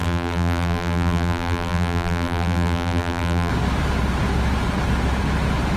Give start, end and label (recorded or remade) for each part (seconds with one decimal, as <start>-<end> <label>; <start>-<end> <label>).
0.0-3.5 remade; 3.5-5.8 recorded